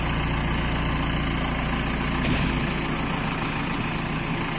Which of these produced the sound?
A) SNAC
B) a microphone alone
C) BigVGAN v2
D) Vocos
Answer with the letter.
B